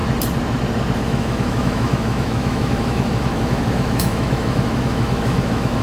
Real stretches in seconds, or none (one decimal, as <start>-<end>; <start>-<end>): 0.0-1.0